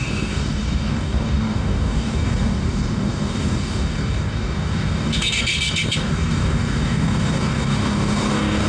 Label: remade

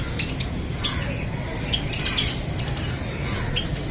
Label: recorded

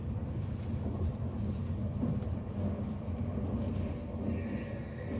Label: recorded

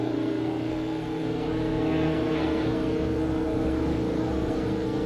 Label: remade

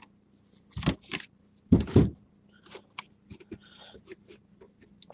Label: recorded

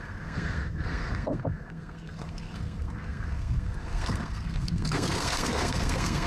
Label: remade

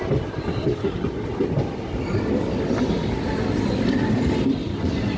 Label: recorded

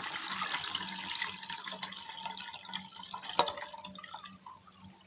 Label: recorded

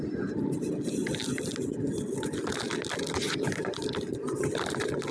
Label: recorded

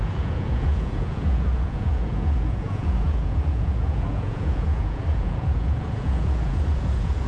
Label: remade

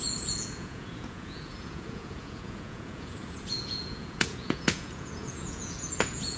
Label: remade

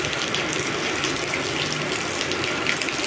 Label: recorded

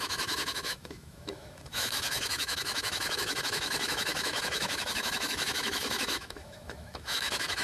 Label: remade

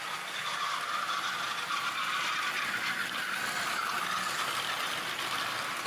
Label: recorded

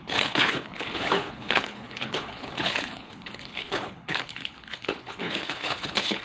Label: remade